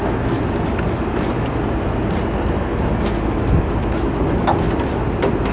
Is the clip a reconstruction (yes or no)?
no